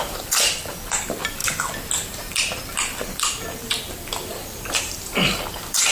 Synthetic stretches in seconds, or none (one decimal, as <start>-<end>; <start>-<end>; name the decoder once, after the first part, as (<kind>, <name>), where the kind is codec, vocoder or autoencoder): 0.0-1.4 (vocoder, BigVGAN v2); 2.2-5.9